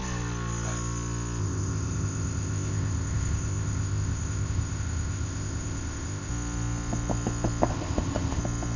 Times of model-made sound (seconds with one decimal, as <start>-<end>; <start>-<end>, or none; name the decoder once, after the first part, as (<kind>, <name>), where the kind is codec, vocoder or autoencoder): 1.4-6.3 (codec, ZipCodec); 7.7-8.4